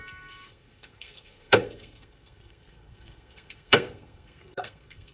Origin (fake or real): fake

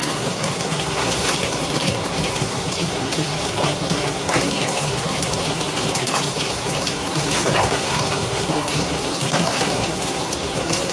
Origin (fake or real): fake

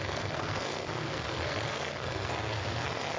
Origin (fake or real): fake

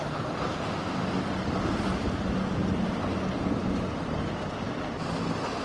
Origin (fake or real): real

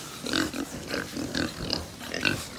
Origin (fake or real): real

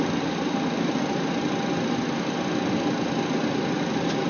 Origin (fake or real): real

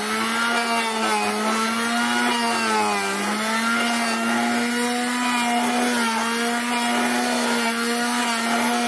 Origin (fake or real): real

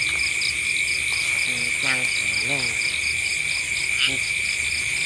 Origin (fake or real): real